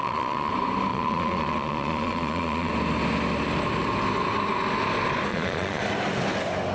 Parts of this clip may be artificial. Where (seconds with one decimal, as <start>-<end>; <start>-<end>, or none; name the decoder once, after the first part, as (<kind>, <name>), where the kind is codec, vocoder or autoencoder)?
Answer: 0.0-0.5 (vocoder, Vocos); 0.9-2.7; 5.3-5.8